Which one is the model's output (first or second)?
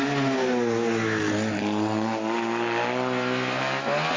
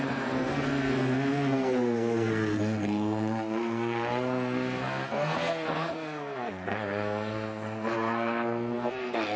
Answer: second